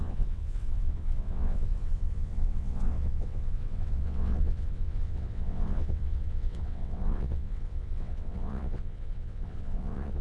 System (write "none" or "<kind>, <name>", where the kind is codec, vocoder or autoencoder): vocoder, WaveNeXt